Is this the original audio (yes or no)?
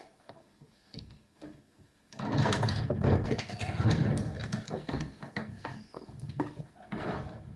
no